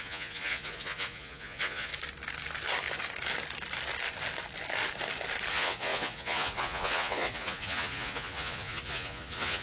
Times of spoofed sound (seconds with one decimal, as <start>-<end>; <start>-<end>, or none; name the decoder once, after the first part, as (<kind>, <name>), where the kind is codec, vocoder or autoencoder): 0.0-1.9 (vocoder, Vocos); 5.5-9.6

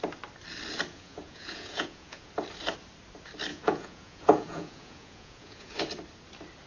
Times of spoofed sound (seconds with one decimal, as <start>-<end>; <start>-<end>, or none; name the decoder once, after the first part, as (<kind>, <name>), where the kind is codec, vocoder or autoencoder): 0.9-2.3 (vocoder, Vocos); 3.5-5.8

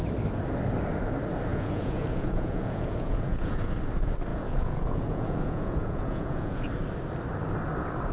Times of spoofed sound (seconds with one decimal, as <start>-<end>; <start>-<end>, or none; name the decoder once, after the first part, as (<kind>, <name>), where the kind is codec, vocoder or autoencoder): 1.5-3.7 (vocoder, Vocos); 4.3-6.7

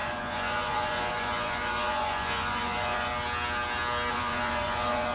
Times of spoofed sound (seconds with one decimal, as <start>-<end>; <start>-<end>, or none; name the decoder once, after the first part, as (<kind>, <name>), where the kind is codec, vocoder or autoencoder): 0.0-3.1 (vocoder, Vocos); 4.1-5.1

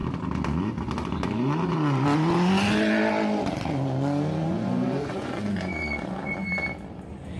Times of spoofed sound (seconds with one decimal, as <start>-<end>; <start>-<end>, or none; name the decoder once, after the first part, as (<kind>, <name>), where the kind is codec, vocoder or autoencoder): 4.4-6.4 (vocoder, Vocos)

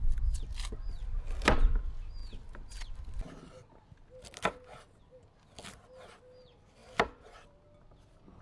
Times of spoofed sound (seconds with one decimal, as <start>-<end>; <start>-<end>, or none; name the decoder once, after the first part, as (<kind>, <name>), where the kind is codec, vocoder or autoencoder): none

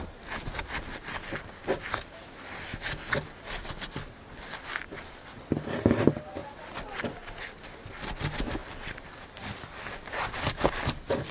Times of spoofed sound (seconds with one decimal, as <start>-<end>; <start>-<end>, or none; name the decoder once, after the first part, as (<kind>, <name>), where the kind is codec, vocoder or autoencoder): none

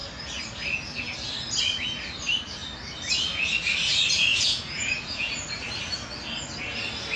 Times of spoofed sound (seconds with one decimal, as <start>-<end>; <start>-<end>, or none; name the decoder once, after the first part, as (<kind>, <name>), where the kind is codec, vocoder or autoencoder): 4.3-5.3 (vocoder, Vocos)